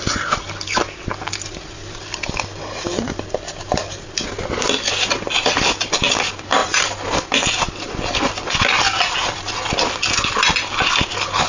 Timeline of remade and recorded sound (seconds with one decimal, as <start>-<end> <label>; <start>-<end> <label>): 0.0-11.5 recorded